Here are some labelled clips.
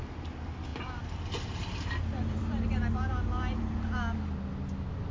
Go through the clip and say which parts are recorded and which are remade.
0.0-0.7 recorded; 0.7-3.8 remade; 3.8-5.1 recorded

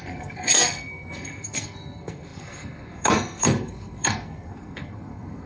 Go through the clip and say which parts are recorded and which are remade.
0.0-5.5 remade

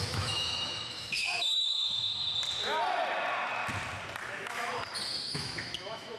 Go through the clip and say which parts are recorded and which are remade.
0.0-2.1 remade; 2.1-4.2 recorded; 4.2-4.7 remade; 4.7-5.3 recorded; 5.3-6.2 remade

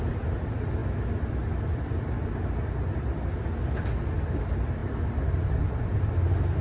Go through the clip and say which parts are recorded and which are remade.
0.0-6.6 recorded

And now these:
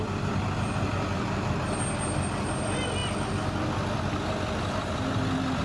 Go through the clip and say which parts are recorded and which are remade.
0.0-5.6 recorded

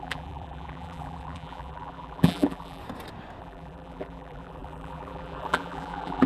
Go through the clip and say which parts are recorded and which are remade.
0.0-2.8 remade; 2.8-3.4 recorded; 3.4-6.3 remade